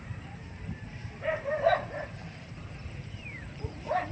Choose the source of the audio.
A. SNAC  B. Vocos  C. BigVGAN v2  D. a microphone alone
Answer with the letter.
C